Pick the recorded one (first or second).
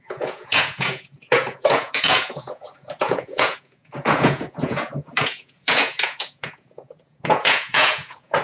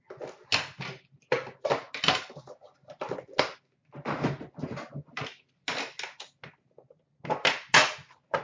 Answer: second